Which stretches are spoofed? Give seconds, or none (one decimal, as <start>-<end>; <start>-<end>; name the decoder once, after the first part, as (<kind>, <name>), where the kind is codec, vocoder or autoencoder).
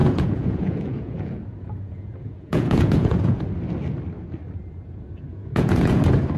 0.0-3.4 (vocoder, Vocos); 5.3-6.0